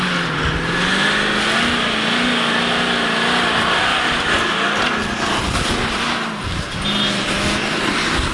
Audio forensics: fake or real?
real